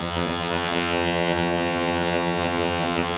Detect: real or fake fake